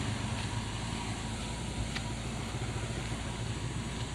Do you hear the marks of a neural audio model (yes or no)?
no